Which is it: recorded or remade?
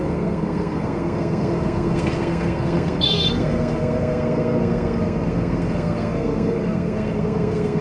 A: remade